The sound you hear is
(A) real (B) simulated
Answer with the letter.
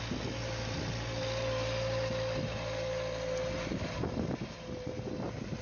A